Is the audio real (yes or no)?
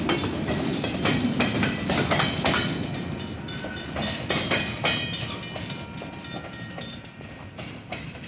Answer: yes